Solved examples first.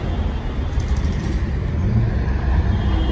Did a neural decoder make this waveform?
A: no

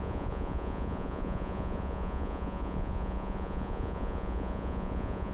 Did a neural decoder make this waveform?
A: yes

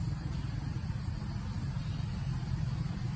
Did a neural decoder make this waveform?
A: yes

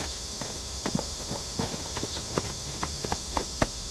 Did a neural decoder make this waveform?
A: yes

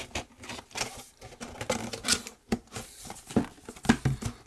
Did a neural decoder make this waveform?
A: no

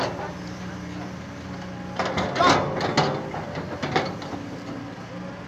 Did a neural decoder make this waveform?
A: no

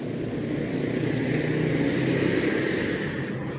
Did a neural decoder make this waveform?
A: no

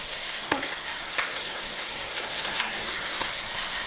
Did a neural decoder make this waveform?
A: yes